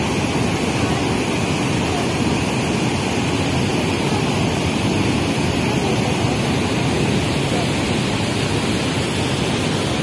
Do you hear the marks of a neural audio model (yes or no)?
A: no